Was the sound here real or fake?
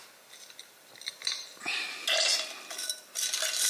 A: real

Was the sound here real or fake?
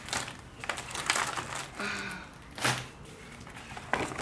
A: real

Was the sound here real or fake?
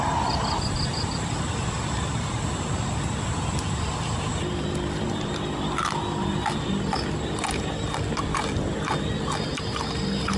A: real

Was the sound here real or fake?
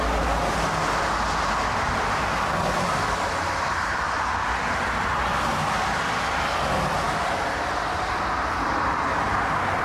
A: real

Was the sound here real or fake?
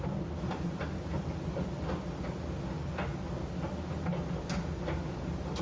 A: real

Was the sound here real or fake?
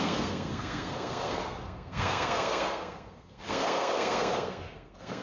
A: fake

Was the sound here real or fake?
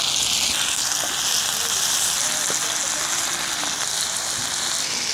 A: real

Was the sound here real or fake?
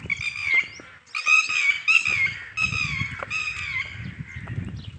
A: real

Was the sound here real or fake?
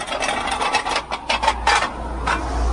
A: real